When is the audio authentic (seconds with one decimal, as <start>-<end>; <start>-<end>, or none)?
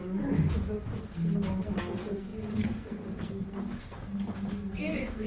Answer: 0.0-1.0